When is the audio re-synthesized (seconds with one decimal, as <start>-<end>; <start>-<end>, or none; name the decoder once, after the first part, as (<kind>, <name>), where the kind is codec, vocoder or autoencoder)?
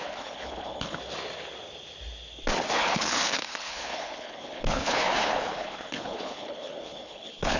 0.0-1.0 (codec, HILCodec); 2.7-7.6